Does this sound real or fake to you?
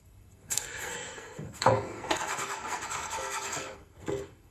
fake